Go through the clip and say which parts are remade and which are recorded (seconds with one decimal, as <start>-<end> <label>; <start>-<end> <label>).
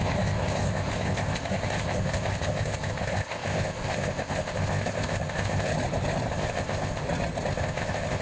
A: 0.0-5.7 remade; 5.7-6.3 recorded; 6.3-7.0 remade; 7.0-7.5 recorded; 7.5-8.2 remade